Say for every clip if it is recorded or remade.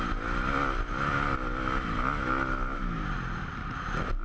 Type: recorded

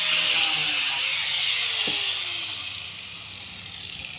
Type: recorded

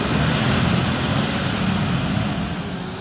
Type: recorded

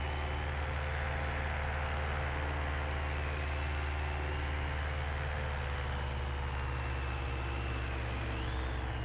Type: recorded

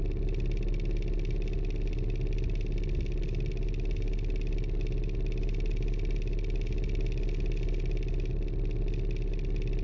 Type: recorded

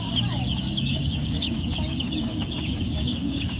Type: remade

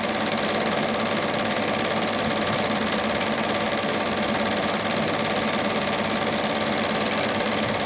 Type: recorded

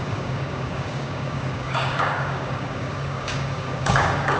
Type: remade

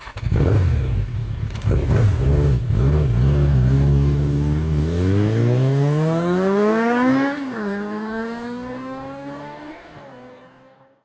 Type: remade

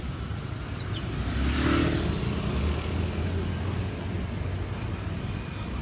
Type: recorded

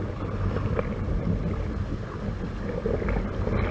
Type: recorded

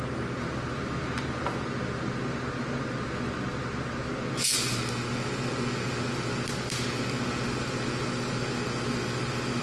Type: recorded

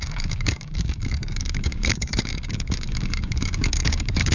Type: remade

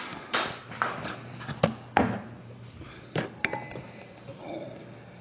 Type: recorded